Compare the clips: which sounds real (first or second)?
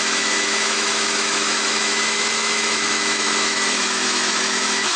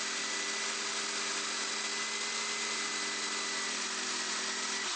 second